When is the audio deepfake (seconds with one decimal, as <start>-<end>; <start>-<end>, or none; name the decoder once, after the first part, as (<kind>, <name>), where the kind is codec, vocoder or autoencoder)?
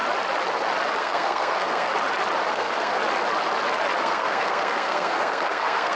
1.0-1.9 (codec, SNAC); 2.5-2.9; 4.0-6.0